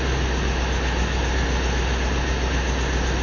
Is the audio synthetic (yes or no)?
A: no